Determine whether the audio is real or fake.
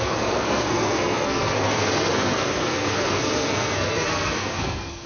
fake